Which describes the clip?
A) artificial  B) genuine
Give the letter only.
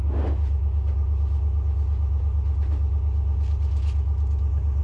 B